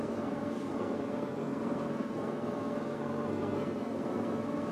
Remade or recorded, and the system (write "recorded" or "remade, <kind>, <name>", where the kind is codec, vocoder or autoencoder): remade, codec, SNAC